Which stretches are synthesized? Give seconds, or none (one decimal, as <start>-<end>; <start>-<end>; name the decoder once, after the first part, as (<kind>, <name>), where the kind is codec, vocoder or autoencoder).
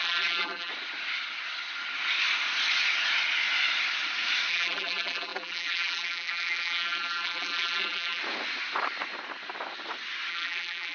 0.0-0.7 (vocoder, BigVGAN v2); 4.5-8.2; 10.3-10.9